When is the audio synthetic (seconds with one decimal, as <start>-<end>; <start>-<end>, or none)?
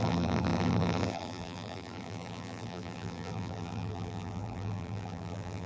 0.0-5.7